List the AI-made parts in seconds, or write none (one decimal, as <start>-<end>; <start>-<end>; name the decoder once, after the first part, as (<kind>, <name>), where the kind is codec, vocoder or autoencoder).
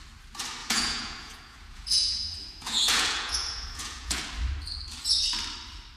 0.6-4.2 (vocoder, Vocos)